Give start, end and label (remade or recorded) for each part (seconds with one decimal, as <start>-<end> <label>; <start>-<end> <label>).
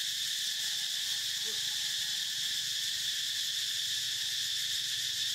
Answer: 0.0-1.8 recorded; 1.8-5.3 remade